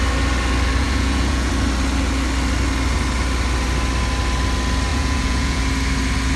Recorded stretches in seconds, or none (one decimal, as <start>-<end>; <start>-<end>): 0.0-0.8; 1.5-4.9; 5.6-6.4